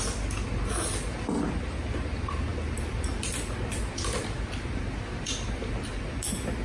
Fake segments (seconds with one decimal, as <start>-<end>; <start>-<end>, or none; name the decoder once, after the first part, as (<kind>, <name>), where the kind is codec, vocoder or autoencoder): none

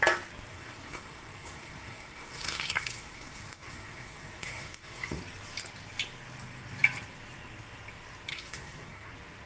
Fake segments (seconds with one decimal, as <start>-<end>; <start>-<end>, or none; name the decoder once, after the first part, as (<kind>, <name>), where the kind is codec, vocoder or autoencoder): 0.5-5.2 (codec, SNAC); 8.3-9.1

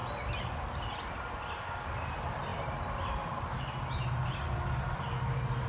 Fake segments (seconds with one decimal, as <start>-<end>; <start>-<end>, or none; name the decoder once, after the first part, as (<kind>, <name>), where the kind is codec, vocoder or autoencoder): none